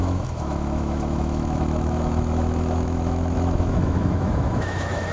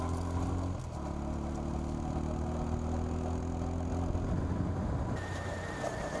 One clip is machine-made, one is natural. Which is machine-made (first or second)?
first